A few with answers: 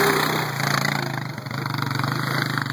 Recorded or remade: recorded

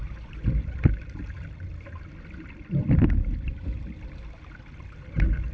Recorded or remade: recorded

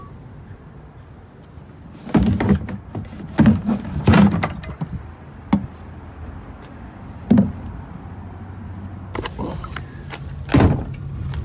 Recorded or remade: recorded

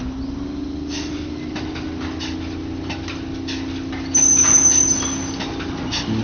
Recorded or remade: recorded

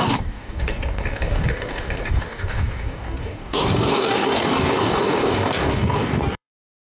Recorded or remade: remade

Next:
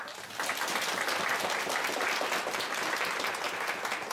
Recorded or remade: recorded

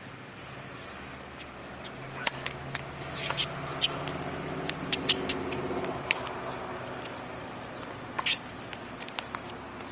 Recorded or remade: recorded